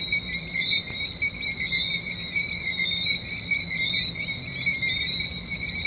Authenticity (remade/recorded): remade